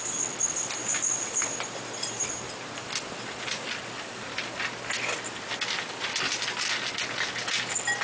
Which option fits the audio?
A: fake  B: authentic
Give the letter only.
B